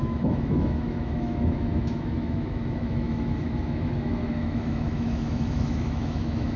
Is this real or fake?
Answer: fake